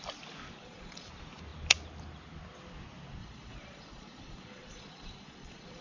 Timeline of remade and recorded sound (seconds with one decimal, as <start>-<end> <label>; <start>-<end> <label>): 0.0-0.6 recorded; 0.6-1.1 remade; 1.1-3.2 recorded; 3.2-5.8 remade